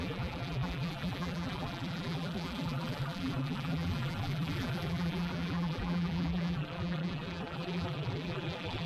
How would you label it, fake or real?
fake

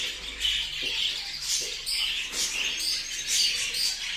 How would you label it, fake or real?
real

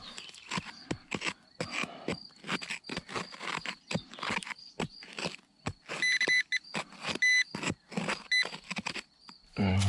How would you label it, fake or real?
real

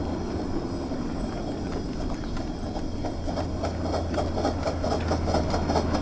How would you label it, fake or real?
real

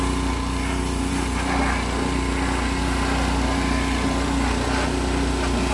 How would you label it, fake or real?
real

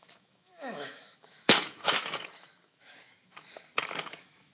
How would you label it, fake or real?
fake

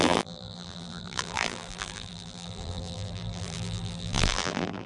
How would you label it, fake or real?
fake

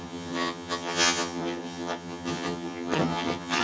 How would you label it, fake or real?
fake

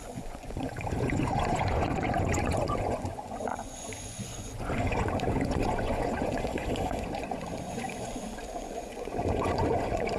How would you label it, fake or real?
fake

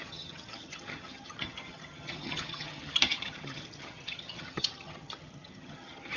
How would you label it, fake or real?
fake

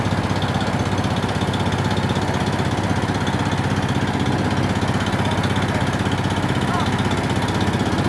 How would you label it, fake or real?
real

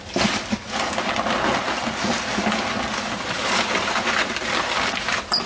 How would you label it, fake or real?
real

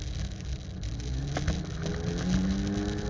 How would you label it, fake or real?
real